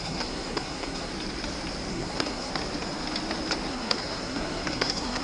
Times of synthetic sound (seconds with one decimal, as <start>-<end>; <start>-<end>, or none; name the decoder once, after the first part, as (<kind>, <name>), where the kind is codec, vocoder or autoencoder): 0.0-1.1 (codec, SNAC); 1.9-2.5; 3.7-5.2